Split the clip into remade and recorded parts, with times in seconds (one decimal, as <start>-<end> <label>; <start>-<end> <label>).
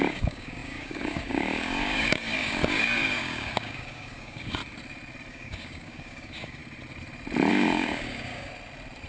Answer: 0.0-4.6 remade; 4.6-5.3 recorded; 5.3-6.6 remade; 6.6-7.5 recorded; 7.5-8.5 remade; 8.5-9.1 recorded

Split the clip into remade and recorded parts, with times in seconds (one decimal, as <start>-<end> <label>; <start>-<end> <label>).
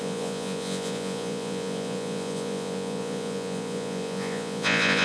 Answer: 0.0-5.0 remade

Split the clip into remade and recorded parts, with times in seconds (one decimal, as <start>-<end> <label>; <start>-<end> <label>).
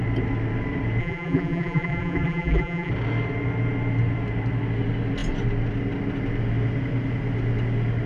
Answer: 0.0-1.0 recorded; 1.0-2.9 remade; 2.9-8.1 recorded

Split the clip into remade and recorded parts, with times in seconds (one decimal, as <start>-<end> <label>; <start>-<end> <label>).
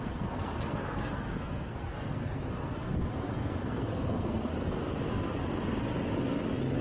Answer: 0.0-4.5 remade; 4.5-6.8 recorded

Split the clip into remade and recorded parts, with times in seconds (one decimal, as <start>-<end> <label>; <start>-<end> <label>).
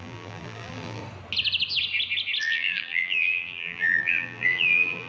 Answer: 0.0-1.0 remade; 1.0-2.4 recorded; 2.4-5.1 remade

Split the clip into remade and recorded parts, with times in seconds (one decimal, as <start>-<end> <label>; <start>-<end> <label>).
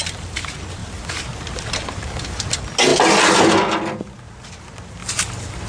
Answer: 0.0-0.8 recorded; 0.8-2.1 remade; 2.1-5.0 recorded; 5.0-5.7 remade